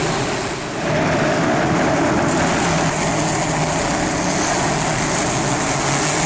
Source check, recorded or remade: recorded